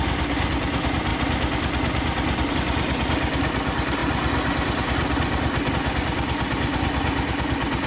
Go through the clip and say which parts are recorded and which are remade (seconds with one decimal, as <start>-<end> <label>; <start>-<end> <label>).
0.0-7.9 recorded